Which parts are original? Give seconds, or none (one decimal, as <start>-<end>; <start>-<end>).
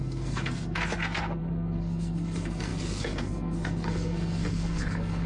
none